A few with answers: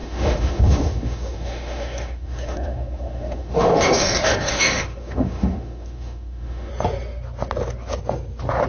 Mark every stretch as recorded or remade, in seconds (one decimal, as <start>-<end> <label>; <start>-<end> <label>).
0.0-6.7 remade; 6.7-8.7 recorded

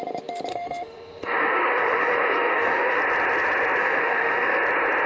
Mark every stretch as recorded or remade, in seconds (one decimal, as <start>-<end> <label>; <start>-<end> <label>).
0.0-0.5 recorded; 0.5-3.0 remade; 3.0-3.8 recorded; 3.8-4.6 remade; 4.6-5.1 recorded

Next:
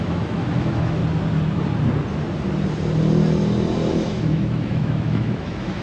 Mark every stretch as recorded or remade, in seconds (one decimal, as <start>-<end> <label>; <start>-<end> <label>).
0.0-1.0 remade; 1.0-3.9 recorded; 3.9-5.8 remade

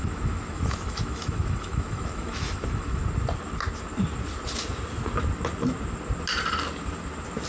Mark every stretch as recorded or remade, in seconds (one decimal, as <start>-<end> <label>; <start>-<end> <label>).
0.0-3.0 remade; 3.0-7.5 recorded